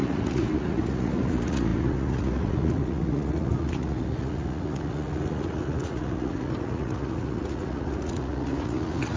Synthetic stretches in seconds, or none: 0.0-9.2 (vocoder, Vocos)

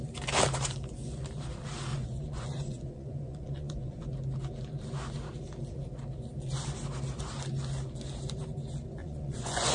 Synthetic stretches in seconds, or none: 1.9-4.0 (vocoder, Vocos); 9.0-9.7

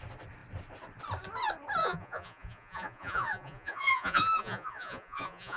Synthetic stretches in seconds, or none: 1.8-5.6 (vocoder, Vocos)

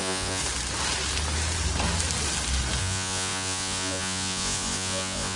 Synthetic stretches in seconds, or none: 0.0-0.4 (vocoder, Vocos); 2.8-5.4

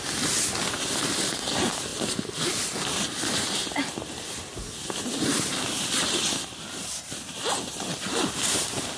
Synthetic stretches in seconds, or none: none